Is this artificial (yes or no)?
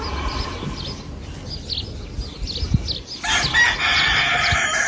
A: no